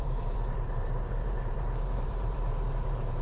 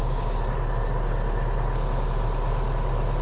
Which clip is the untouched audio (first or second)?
second